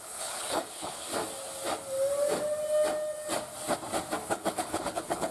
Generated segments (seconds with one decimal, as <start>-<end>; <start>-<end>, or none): 0.0-1.1; 4.3-5.3